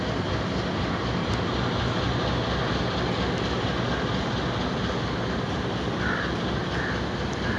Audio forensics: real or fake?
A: real